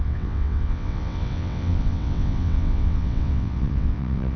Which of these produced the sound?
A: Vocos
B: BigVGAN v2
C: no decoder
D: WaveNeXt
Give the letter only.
D